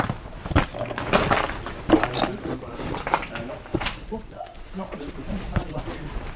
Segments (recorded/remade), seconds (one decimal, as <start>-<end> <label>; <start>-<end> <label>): 0.0-3.7 recorded; 3.7-5.8 remade; 5.8-6.4 recorded

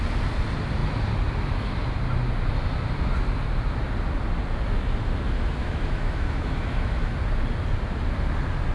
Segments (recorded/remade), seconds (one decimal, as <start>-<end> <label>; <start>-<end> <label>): 0.0-5.6 recorded; 5.6-7.0 remade; 7.0-8.7 recorded

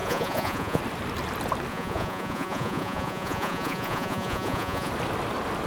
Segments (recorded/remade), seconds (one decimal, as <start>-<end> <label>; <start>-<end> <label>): 0.0-0.8 remade; 0.8-1.7 recorded; 1.7-4.9 remade; 4.9-5.7 recorded

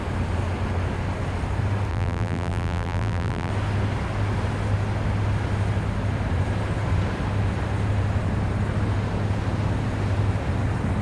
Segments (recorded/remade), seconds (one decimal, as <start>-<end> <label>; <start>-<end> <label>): 0.0-1.9 recorded; 1.9-3.5 remade; 3.5-11.0 recorded

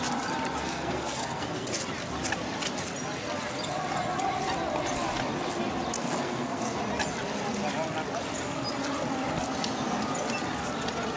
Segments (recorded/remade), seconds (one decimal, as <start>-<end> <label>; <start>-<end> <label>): 0.0-0.6 recorded; 0.6-1.8 remade; 1.8-6.0 recorded; 6.0-6.8 remade; 6.8-11.2 recorded

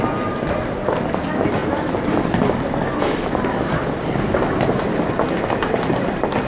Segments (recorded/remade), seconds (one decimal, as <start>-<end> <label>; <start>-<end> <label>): 0.0-6.5 recorded

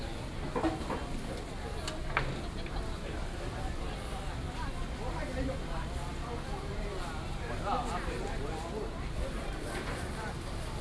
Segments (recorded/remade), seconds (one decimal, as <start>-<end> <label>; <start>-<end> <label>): 0.0-10.8 recorded

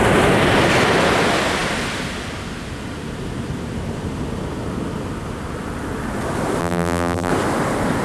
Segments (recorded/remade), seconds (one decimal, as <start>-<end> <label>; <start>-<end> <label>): 0.0-6.6 recorded; 6.6-7.3 remade; 7.3-8.0 recorded